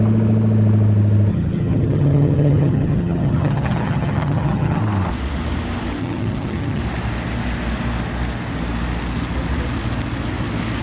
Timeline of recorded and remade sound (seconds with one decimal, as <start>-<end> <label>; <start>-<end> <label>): 0.0-1.3 recorded; 1.3-4.8 remade; 4.8-6.0 recorded; 6.0-6.8 remade; 6.8-10.8 recorded

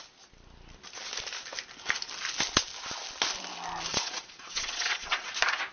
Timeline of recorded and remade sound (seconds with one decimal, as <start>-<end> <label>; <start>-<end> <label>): 0.0-3.9 recorded; 3.9-5.3 remade; 5.3-5.7 recorded

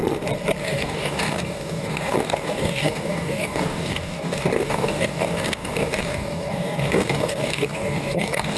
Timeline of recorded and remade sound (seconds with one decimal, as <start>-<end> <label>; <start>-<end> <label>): 0.0-0.6 recorded; 0.6-8.6 remade

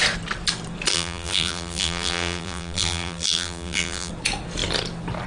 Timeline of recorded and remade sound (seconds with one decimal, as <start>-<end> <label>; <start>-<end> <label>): 0.0-0.9 recorded; 0.9-4.1 remade; 4.1-5.3 recorded

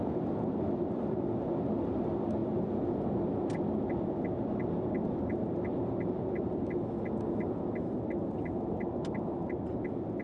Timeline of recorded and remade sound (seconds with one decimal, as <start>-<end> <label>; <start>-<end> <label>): 0.0-10.2 recorded